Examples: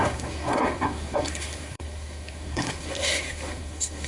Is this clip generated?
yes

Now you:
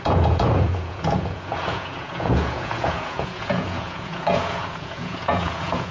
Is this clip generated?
yes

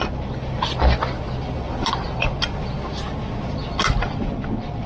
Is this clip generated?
no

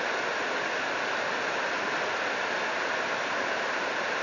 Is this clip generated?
no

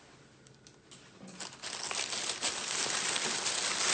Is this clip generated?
no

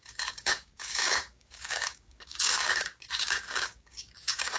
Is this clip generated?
yes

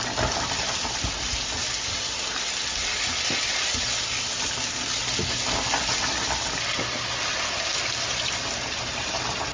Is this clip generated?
no